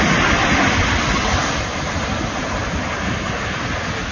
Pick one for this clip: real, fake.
real